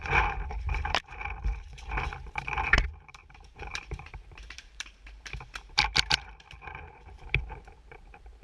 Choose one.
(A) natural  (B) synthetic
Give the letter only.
B